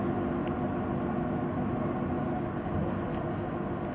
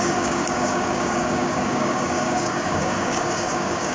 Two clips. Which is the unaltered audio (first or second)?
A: first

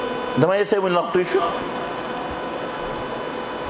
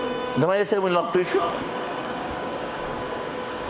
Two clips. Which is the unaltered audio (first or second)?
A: first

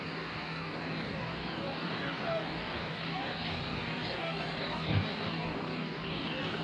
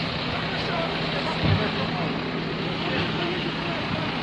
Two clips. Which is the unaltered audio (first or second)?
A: second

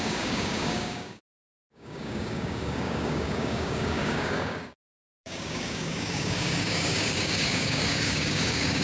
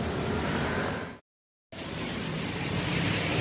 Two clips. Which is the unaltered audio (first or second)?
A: second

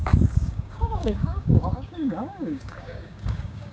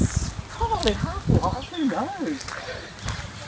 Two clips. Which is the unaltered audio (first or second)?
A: second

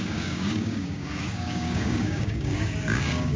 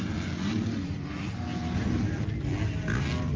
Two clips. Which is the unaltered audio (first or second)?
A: second